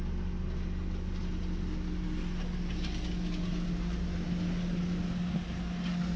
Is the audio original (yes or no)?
yes